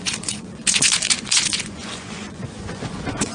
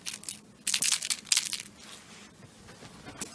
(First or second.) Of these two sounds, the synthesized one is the first